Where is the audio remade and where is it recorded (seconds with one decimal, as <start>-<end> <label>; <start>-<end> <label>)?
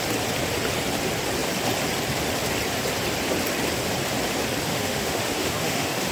0.0-4.7 recorded; 4.7-6.1 remade